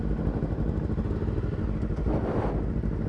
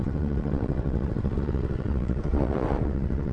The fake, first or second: second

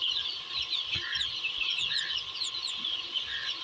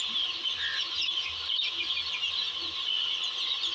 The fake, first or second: first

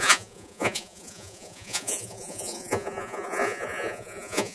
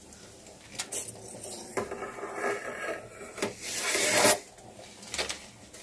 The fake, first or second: first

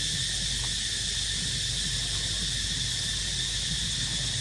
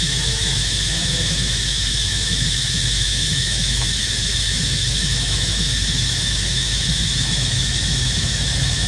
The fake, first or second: second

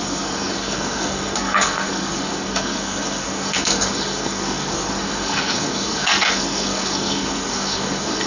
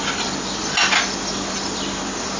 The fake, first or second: first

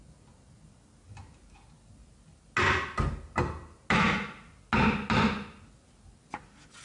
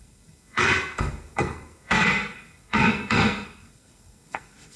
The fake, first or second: second